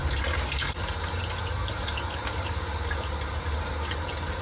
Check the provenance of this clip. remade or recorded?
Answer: recorded